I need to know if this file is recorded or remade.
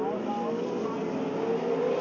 recorded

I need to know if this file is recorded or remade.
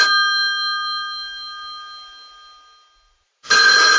recorded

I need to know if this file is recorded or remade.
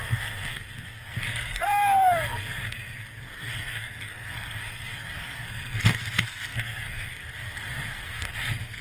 remade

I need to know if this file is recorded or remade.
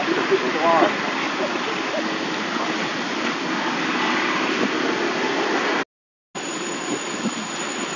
recorded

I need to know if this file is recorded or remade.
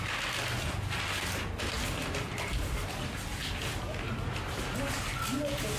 recorded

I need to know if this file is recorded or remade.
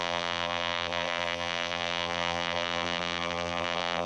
remade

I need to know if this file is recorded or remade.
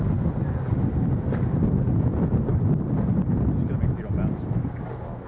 recorded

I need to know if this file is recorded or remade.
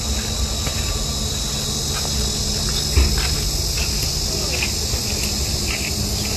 recorded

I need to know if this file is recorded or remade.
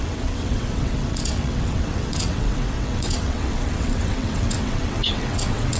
remade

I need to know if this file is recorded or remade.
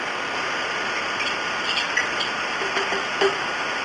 recorded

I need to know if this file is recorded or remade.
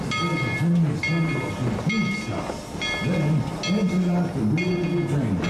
recorded